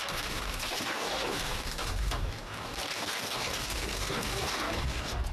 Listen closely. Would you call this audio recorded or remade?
remade